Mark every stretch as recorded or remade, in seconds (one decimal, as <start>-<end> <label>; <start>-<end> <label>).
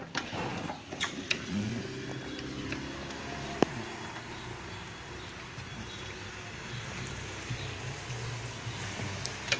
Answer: 0.0-0.5 recorded; 0.5-1.7 remade; 1.7-9.6 recorded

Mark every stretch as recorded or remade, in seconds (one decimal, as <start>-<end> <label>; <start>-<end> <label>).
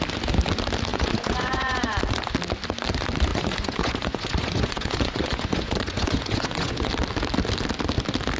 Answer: 0.0-0.9 recorded; 0.9-2.0 remade; 2.0-3.3 recorded; 3.3-6.9 remade; 6.9-8.4 recorded